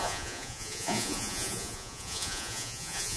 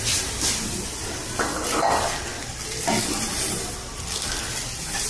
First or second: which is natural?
second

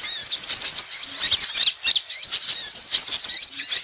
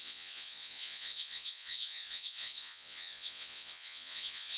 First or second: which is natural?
first